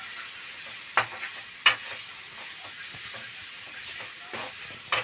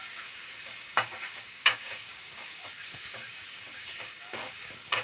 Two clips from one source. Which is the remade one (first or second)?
second